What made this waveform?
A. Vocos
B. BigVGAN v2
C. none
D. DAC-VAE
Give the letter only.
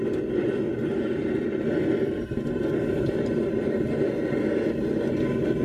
C